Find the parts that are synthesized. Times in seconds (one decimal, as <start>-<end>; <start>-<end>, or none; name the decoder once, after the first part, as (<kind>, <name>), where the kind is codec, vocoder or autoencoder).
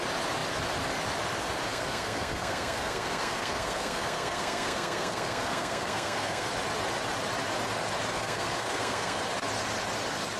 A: 1.7-6.5 (codec, SNAC); 8.1-9.2